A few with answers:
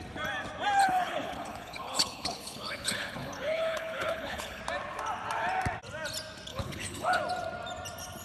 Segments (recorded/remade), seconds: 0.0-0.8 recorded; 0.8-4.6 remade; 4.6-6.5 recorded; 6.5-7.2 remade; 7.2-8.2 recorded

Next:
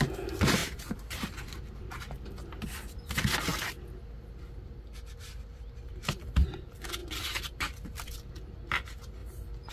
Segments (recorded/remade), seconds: 0.0-0.6 recorded; 0.6-1.9 remade; 1.9-7.0 recorded; 7.0-7.8 remade; 7.8-9.7 recorded

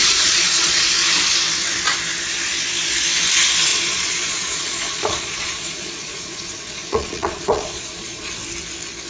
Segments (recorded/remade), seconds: 0.0-0.8 remade; 0.8-3.7 recorded; 3.7-8.3 remade; 8.3-9.1 recorded

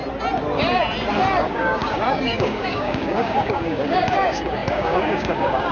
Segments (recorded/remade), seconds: 0.0-1.4 recorded; 1.4-5.7 remade

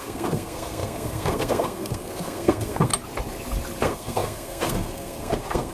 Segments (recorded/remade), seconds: 0.0-2.9 remade; 2.9-3.8 recorded; 3.8-5.7 remade

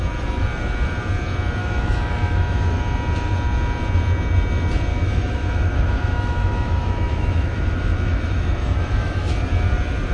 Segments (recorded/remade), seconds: 0.0-1.6 recorded; 1.6-2.8 remade; 2.8-4.9 recorded; 4.9-9.3 remade; 9.3-10.1 recorded